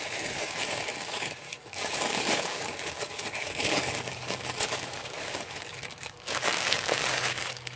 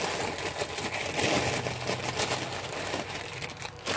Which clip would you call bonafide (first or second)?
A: second